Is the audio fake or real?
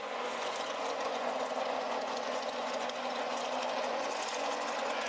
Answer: fake